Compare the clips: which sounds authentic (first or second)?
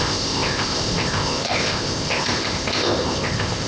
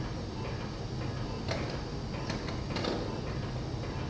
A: second